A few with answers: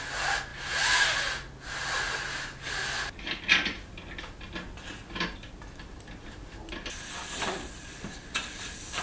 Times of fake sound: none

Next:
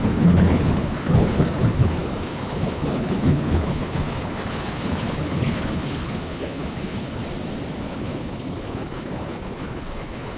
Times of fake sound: 0.0-7.2 (codec, HILCodec); 7.8-10.4

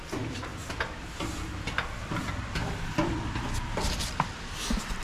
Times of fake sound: 2.6-4.6 (vocoder, BigVGAN v2)

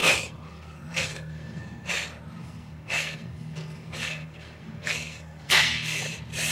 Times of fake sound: 0.0-1.9 (codec, SNAC); 2.4-6.0

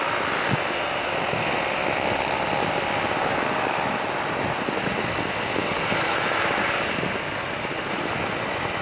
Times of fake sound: none

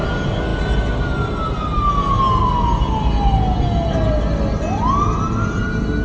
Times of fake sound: none

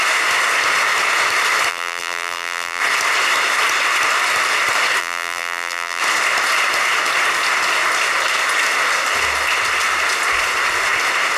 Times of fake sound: 1.7-2.8 (vocoder, BigVGAN v2); 5.0-6.0

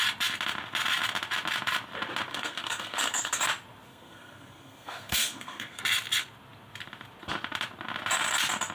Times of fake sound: 2.3-3.4 (codec, SNAC); 3.9-5.8